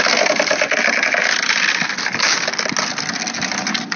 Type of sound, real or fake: real